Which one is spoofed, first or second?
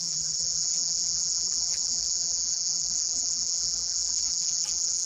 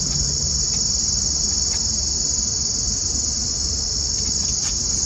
first